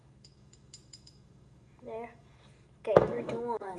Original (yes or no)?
no